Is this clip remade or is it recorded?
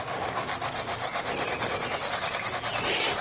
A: recorded